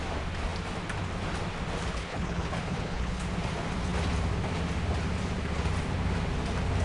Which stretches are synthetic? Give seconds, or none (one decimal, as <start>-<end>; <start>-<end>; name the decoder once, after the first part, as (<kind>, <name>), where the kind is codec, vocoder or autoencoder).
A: 1.9-3.2 (codec, HILCodec)